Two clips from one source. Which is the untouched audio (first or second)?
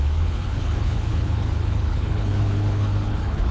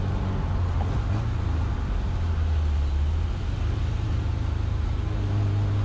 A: second